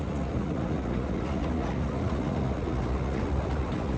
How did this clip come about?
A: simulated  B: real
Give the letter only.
A